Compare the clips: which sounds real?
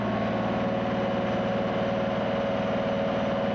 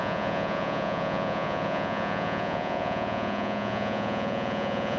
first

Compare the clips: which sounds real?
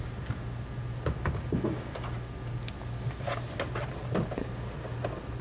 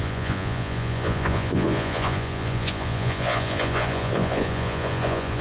first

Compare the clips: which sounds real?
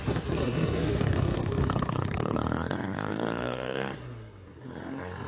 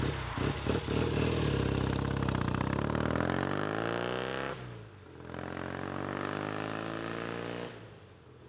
second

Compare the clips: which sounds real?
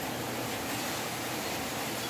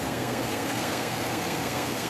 first